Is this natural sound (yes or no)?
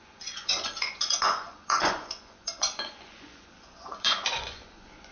no